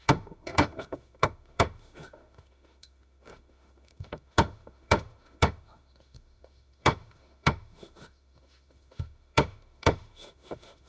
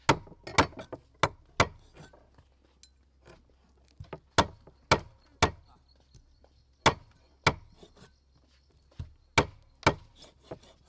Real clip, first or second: second